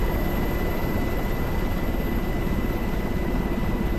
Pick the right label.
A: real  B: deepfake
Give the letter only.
A